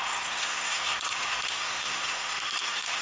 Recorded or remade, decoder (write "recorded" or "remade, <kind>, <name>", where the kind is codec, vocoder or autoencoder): remade, codec, SNAC